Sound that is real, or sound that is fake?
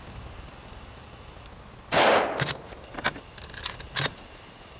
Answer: real